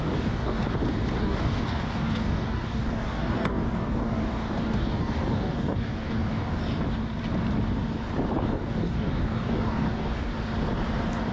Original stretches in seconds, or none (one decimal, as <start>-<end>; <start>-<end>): 0.6-1.2; 6.6-8.4; 10.3-11.3